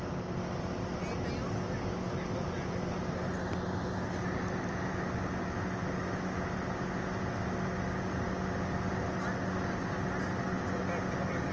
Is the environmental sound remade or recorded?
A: recorded